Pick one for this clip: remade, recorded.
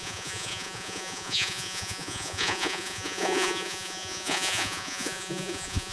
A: remade